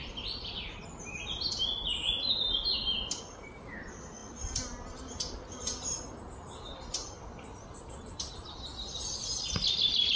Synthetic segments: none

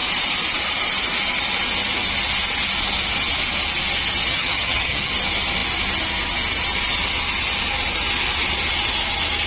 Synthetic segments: 4.3-5.1

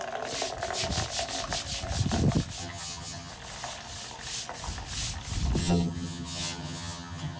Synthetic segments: 2.6-3.3; 5.6-7.4

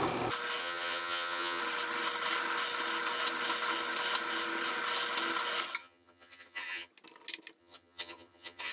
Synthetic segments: 0.6-1.6; 5.8-6.9; 7.6-8.7

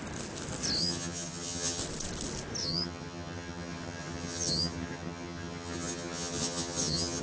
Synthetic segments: 0.8-1.8; 2.6-7.2

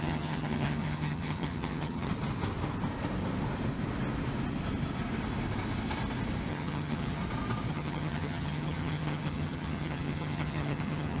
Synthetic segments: 0.0-2.1; 6.5-7.2; 7.7-11.2